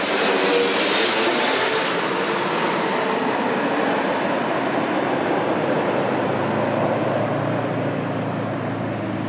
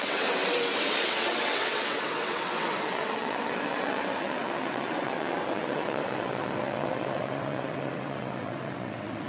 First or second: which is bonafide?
first